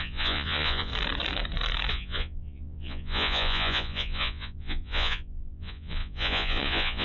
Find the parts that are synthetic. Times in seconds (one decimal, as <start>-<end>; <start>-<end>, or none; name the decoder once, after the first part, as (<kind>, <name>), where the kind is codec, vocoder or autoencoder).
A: 0.0-0.9 (vocoder, Vocos); 1.9-7.0